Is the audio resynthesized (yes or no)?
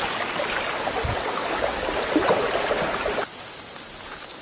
no